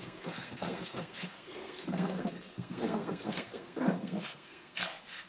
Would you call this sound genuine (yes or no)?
no